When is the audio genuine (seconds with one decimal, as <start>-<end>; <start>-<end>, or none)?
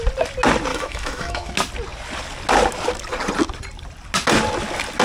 0.0-0.7; 1.5-5.0